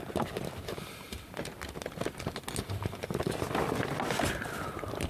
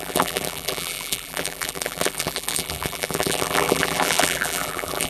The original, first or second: first